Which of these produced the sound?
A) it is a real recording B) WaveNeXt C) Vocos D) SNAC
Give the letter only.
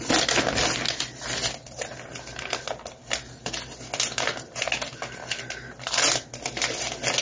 A